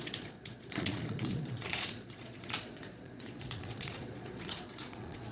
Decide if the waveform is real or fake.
fake